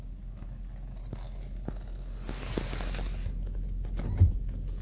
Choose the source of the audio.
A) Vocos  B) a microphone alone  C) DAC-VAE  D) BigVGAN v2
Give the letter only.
B